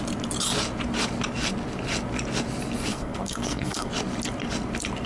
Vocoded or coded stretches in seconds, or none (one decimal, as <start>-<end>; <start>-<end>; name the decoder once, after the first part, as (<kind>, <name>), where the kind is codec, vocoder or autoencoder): 2.9-3.9 (codec, SNAC)